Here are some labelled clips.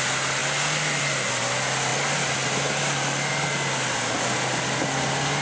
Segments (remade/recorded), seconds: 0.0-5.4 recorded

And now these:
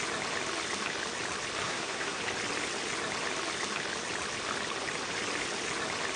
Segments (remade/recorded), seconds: 0.0-1.6 recorded; 1.6-2.2 remade; 2.2-6.2 recorded

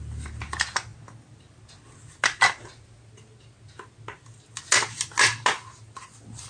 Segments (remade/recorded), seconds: 0.0-6.5 recorded

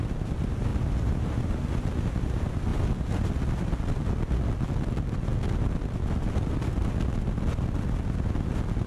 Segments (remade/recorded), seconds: 0.0-0.7 recorded; 0.7-1.4 remade; 1.4-8.9 recorded

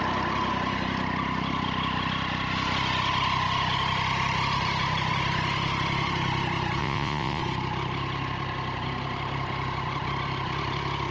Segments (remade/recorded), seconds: 0.0-6.8 recorded; 6.8-7.4 remade; 7.4-11.1 recorded